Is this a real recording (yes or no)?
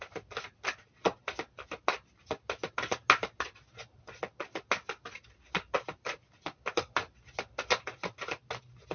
yes